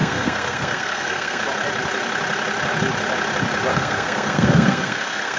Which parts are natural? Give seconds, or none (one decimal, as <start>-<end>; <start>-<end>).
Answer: 1.4-3.7